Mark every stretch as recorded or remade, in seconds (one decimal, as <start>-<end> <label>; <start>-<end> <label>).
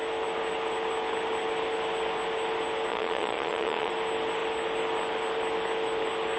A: 0.0-2.9 recorded; 2.9-3.9 remade; 3.9-6.4 recorded